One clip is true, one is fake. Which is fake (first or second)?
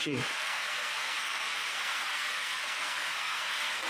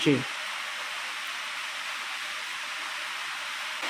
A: first